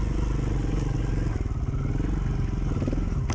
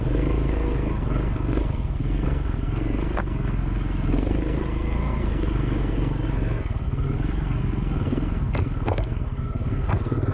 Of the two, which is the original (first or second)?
first